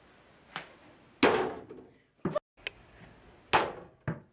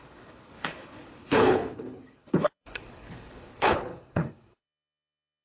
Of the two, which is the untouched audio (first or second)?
first